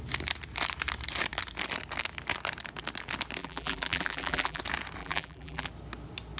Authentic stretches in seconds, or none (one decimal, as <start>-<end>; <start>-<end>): 0.0-3.4; 4.6-5.0; 5.7-6.4